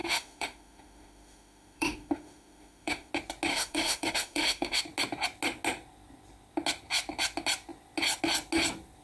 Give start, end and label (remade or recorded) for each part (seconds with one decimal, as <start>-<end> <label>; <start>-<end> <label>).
0.0-3.1 remade; 3.1-3.5 recorded; 3.5-4.8 remade; 4.8-9.0 recorded